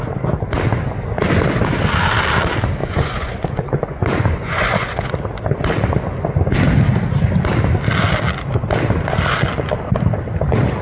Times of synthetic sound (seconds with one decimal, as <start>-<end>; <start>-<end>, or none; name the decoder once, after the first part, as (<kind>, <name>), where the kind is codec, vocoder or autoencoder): 2.8-5.1 (vocoder, Vocos)